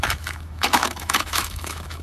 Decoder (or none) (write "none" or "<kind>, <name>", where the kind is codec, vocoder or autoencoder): autoencoder, DAC-VAE